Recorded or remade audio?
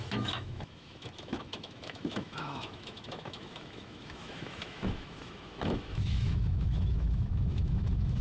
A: remade